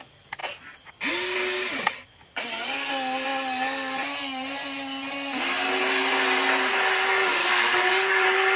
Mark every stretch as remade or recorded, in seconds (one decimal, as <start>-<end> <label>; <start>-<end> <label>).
0.0-7.4 recorded; 7.4-8.6 remade

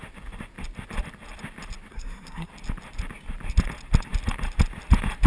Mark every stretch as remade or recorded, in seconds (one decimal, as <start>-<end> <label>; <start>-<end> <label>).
0.0-1.9 recorded; 1.9-2.5 remade; 2.5-5.3 recorded